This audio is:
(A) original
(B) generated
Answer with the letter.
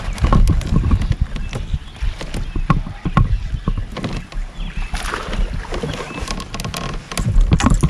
A